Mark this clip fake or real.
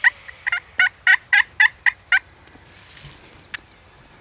real